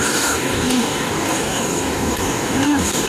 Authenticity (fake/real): fake